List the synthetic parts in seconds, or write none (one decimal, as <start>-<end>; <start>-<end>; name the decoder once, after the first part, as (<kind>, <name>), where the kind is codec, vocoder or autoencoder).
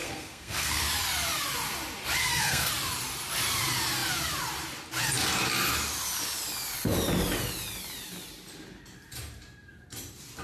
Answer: 0.0-0.8 (codec, SNAC); 2.2-2.7